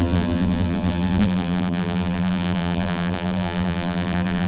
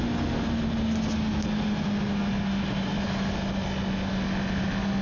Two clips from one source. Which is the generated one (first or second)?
first